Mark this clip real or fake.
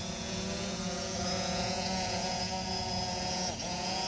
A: fake